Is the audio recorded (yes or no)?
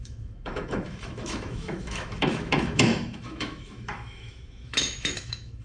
no